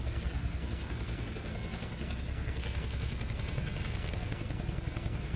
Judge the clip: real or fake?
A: fake